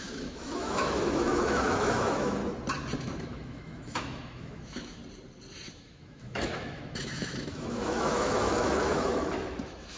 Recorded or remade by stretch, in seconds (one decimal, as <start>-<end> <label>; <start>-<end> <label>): 0.0-2.4 remade; 2.4-3.0 recorded; 3.0-5.0 remade; 5.0-5.7 recorded; 5.7-10.0 remade